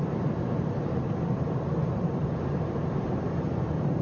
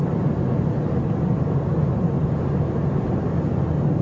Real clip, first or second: second